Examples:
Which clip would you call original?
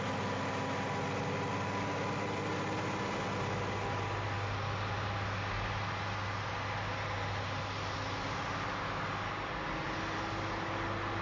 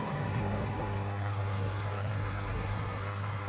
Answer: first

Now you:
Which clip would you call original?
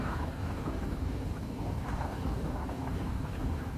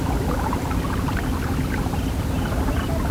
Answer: second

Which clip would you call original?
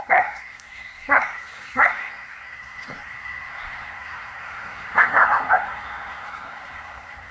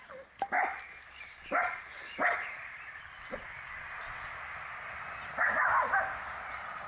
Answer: second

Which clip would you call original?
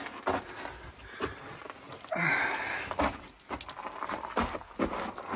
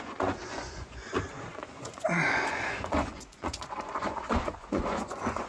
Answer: first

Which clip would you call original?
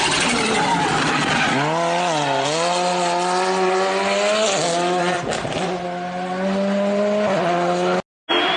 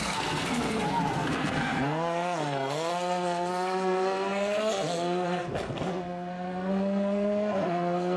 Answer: first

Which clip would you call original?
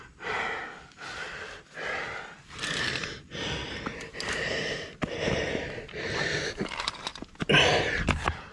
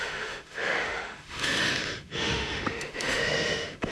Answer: first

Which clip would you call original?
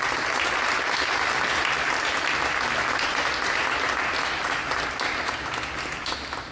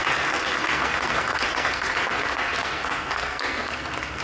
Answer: first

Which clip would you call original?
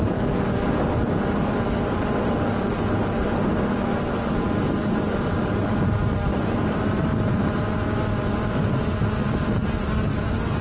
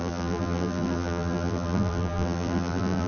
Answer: first